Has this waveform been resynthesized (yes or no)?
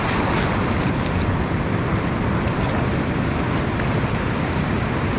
no